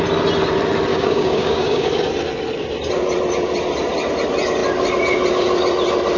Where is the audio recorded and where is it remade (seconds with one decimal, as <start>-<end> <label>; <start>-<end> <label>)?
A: 0.0-0.9 recorded; 0.9-1.9 remade; 1.9-6.2 recorded